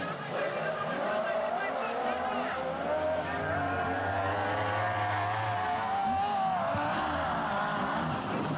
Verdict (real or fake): real